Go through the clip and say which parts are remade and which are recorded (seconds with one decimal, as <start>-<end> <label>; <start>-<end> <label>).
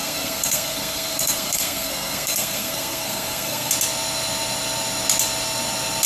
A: 0.0-3.7 remade; 3.7-6.1 recorded